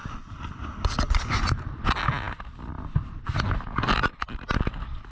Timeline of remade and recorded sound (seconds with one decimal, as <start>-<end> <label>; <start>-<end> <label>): 0.0-5.1 recorded